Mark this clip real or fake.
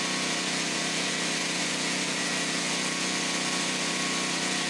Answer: fake